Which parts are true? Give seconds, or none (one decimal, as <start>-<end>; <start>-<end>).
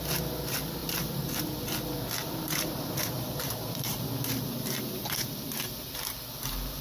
0.0-0.8; 1.4-2.2; 5.9-6.8